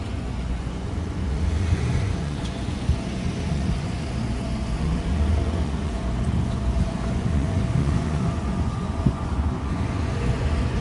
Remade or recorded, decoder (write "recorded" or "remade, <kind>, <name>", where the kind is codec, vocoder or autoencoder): remade, vocoder, Vocos